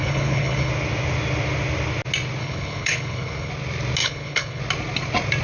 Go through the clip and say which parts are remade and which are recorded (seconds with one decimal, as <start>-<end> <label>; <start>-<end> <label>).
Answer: 0.0-0.7 remade; 0.7-2.4 recorded; 2.4-3.5 remade; 3.5-4.0 recorded; 4.0-4.6 remade; 4.6-5.4 recorded